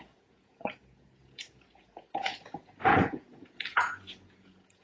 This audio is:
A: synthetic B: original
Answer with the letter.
A